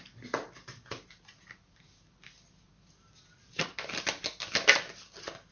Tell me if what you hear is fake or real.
real